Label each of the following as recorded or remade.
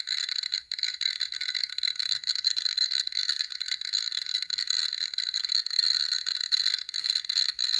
remade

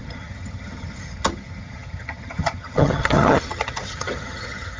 remade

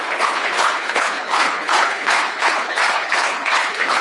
remade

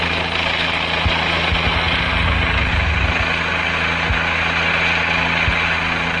recorded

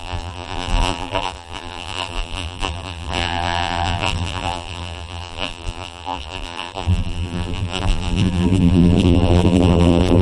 remade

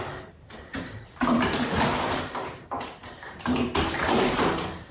remade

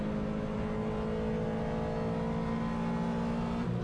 recorded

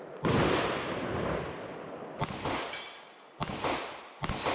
recorded